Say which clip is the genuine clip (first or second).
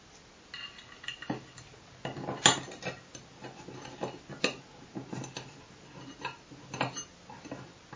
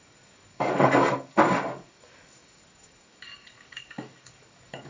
first